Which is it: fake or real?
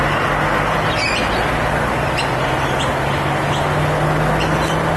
real